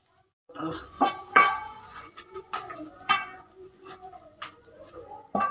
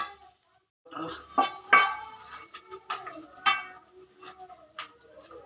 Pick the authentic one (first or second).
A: second